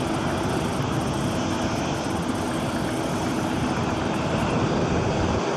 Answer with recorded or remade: recorded